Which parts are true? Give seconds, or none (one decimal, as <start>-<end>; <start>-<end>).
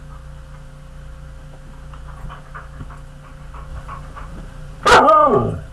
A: 0.0-3.7; 4.9-5.7